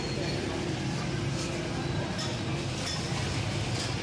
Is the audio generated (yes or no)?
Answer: no